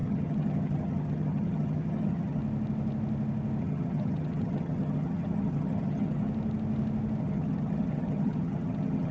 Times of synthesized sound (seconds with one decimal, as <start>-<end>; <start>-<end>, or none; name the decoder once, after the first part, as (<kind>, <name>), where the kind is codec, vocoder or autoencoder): 0.0-2.4 (vocoder, HiFi-GAN); 3.6-6.3; 7.2-9.1